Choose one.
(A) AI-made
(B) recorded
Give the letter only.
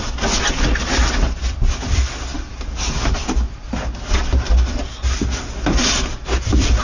B